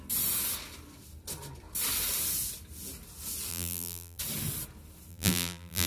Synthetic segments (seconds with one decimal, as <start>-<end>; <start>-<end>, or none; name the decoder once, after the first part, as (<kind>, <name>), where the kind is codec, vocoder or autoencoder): 3.5-4.2 (vocoder, BigVGAN v2); 5.1-5.9